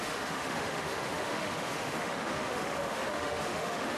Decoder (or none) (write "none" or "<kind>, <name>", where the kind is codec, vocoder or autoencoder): autoencoder, DAC-VAE